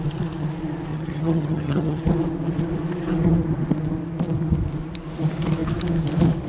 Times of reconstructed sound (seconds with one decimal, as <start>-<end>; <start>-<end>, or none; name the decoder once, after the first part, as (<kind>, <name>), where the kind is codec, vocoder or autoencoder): 0.9-2.0 (vocoder, HiFi-GAN)